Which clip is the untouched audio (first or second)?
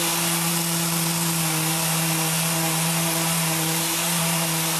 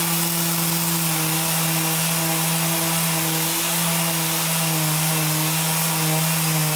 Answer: second